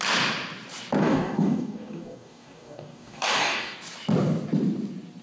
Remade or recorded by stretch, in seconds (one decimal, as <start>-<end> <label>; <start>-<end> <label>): 0.0-1.0 recorded; 1.0-3.8 remade; 3.8-5.2 recorded